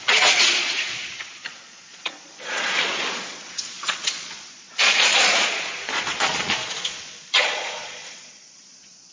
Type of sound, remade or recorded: remade